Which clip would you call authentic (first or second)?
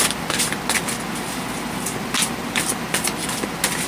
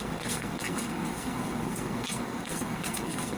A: first